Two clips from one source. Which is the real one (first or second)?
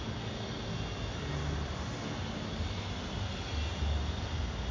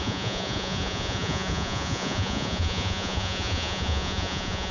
first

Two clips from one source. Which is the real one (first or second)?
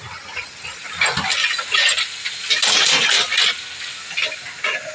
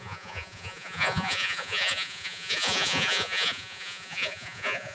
first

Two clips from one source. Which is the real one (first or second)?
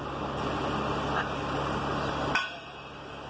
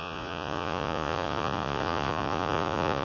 first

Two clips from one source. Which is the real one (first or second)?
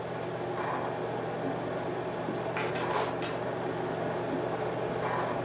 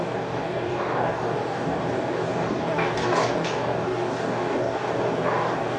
first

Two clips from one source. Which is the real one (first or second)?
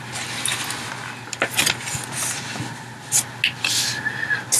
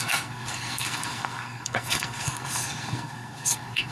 first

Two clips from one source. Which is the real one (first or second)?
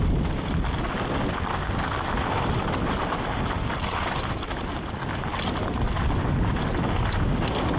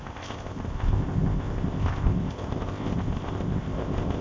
first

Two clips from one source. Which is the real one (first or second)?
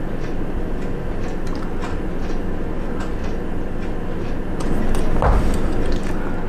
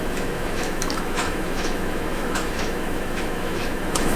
first